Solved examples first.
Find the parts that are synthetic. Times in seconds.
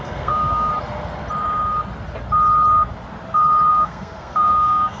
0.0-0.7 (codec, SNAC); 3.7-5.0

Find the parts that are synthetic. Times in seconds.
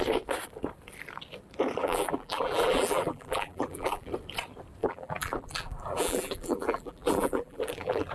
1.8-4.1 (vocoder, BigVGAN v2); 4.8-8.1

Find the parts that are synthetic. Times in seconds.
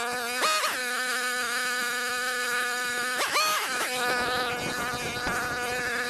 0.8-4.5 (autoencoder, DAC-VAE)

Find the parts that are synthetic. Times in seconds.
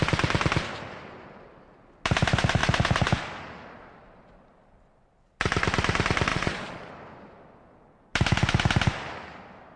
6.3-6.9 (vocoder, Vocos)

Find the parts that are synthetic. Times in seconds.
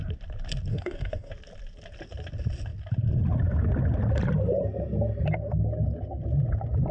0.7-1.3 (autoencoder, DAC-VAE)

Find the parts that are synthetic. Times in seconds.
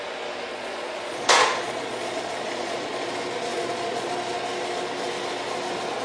0.5-3.1 (vocoder, Vocos); 3.5-4.1